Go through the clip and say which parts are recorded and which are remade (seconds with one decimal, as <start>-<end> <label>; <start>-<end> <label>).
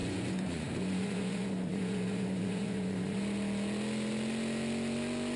0.0-3.2 remade; 3.2-5.4 recorded